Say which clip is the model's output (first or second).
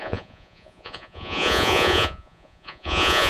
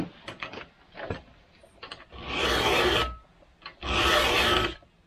first